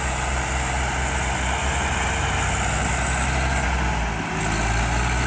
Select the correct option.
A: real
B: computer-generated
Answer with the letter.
A